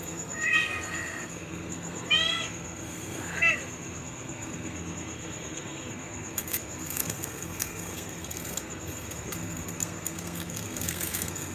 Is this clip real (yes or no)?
no